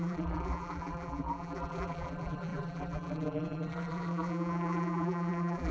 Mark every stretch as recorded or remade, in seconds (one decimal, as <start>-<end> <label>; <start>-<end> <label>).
0.0-5.7 remade